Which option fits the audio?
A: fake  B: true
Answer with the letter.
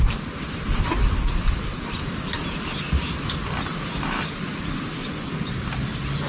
B